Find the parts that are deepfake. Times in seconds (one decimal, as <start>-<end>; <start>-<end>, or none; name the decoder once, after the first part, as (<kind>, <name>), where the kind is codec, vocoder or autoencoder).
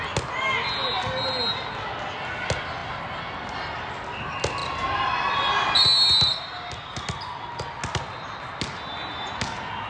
none